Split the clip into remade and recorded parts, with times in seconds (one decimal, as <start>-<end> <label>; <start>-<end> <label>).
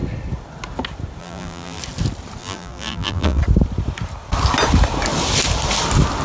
0.0-1.2 recorded; 1.2-1.8 remade; 1.8-2.4 recorded; 2.4-3.4 remade; 3.4-6.2 recorded